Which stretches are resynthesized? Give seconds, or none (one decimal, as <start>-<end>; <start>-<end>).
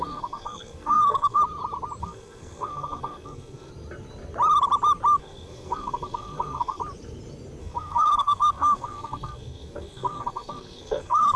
0.0-1.4; 2.0-3.7; 5.2-6.8; 7.6-11.4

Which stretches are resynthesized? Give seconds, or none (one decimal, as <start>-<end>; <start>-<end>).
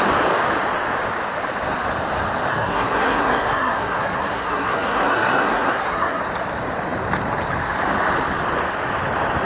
2.5-6.2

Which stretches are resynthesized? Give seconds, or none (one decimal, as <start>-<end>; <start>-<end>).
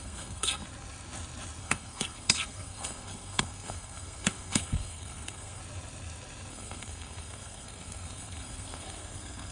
0.0-0.6; 1.6-5.6; 6.5-9.5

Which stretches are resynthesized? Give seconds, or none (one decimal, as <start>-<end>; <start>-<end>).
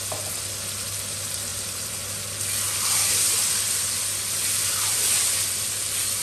none